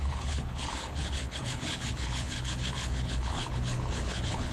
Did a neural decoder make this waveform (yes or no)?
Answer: yes